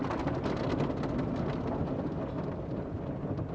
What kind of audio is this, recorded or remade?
recorded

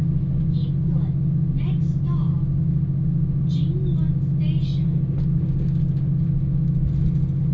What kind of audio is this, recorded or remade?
recorded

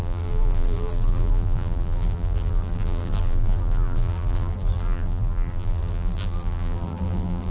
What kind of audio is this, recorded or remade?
remade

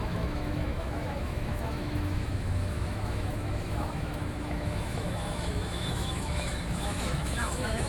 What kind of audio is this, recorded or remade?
remade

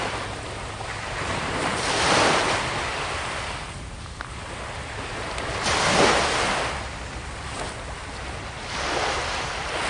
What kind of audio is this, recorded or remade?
recorded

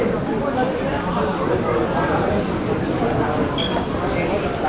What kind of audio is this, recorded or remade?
recorded